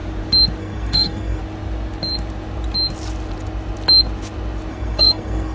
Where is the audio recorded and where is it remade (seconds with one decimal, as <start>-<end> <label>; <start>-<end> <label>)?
0.0-0.6 recorded; 0.6-1.4 remade; 1.4-4.7 recorded; 4.7-5.5 remade